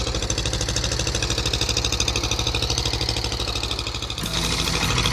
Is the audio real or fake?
real